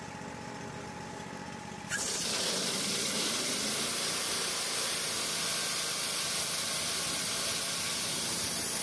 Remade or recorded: recorded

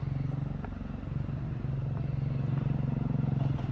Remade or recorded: recorded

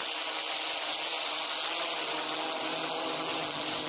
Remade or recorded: recorded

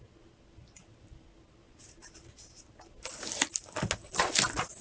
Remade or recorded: recorded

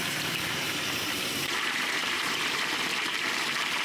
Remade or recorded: remade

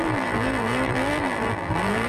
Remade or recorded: remade